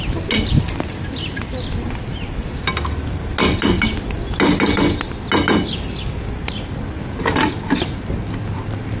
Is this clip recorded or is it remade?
recorded